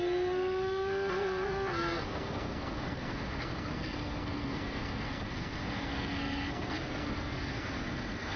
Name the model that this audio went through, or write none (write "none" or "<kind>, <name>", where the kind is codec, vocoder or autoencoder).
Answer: codec, SNAC